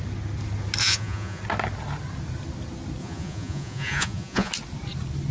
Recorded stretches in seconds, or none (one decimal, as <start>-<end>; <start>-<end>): 0.0-0.8; 1.4-3.0; 4.5-5.3